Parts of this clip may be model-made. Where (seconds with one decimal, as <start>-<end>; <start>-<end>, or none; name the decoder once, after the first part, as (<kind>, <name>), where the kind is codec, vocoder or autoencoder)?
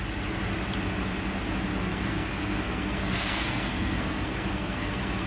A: 1.7-5.3 (codec, SNAC)